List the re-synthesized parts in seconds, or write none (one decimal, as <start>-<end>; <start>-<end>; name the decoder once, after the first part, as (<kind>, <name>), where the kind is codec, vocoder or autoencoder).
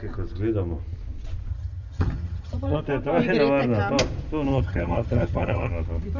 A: 1.5-2.8 (vocoder, HiFi-GAN); 4.5-5.7